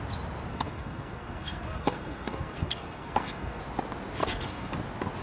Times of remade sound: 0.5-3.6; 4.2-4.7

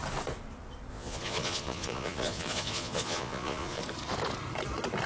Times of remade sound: 0.9-3.8

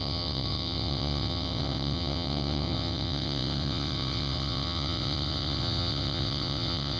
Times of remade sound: 0.0-7.0

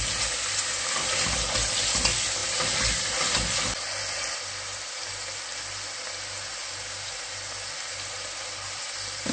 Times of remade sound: none

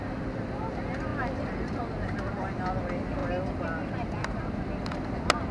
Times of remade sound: none